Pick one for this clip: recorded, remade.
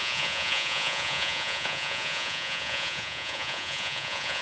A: remade